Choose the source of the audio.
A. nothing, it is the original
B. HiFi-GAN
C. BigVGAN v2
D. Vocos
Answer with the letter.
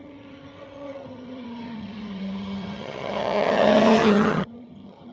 B